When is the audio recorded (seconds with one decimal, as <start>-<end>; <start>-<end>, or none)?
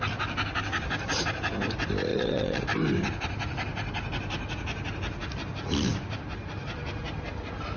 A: 0.0-2.1; 2.6-7.8